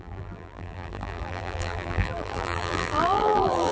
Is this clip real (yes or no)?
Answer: no